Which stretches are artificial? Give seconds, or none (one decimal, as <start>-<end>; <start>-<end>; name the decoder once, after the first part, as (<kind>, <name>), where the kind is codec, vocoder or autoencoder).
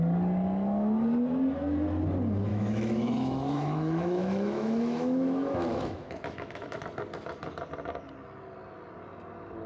2.5-6.8 (autoencoder, DAC-VAE)